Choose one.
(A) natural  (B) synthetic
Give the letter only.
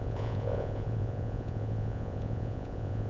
B